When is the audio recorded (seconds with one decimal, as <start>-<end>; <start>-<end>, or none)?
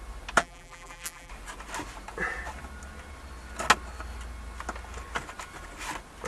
0.0-0.4; 1.3-6.3